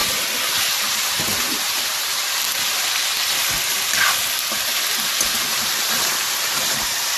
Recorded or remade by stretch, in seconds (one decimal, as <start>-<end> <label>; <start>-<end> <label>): 0.0-0.6 recorded; 0.6-2.5 remade; 2.5-5.4 recorded; 5.4-7.2 remade